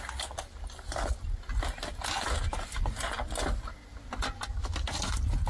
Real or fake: real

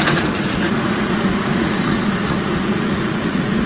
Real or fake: fake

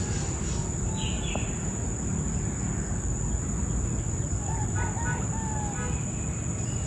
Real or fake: real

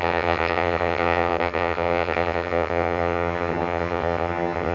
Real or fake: fake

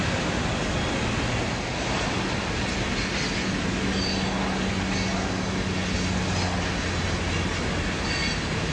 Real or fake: real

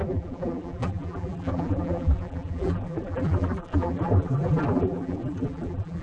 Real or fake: fake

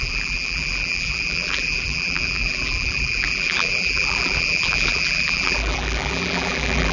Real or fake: fake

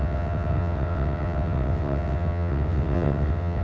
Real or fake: fake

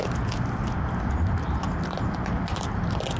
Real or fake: real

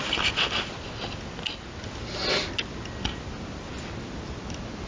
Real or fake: real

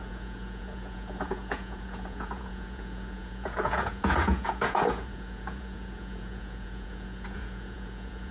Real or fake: fake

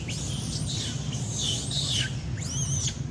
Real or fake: real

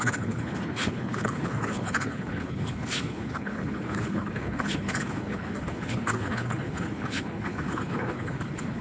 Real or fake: fake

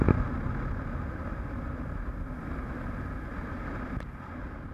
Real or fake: real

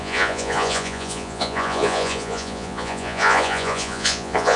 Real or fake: fake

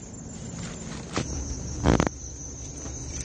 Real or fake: real